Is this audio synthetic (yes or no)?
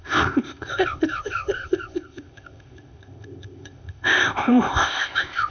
yes